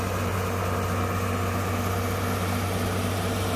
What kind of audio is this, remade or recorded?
recorded